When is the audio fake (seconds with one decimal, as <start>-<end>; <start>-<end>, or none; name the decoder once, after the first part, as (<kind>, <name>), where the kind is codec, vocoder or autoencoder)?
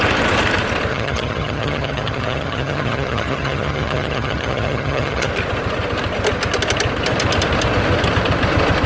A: 0.9-5.3 (vocoder, HiFi-GAN)